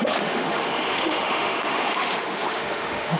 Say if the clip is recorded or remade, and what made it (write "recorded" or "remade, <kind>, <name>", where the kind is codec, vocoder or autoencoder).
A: remade, autoencoder, DAC-VAE